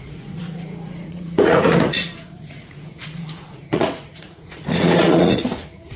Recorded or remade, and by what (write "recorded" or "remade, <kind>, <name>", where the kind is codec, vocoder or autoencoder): remade, vocoder, Vocos